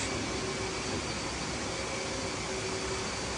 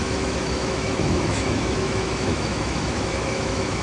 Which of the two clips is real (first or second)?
first